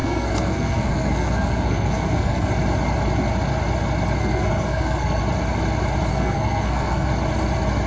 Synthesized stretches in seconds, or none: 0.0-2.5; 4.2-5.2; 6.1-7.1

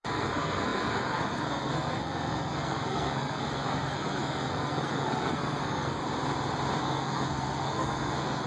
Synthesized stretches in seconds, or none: 0.0-6.0; 6.8-8.5